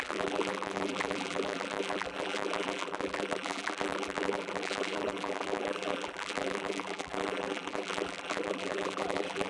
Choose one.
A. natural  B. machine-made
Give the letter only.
B